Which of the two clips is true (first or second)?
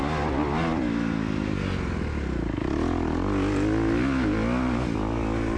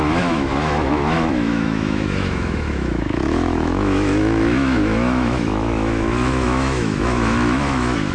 first